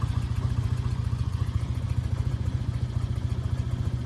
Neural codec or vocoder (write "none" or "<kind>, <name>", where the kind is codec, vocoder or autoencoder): vocoder, Vocos